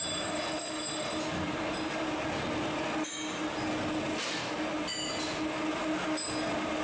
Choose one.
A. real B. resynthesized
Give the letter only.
A